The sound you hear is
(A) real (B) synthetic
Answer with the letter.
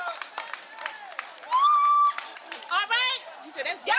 A